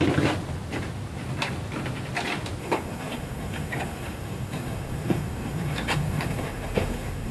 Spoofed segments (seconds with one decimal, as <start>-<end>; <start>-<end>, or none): 2.6-7.3